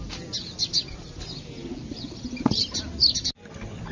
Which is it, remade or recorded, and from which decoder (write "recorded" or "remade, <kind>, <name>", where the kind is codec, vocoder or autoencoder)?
recorded